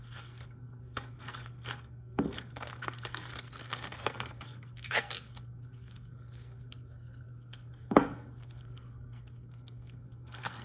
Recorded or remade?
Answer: remade